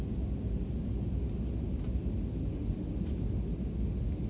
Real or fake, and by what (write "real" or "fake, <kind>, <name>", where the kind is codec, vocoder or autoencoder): real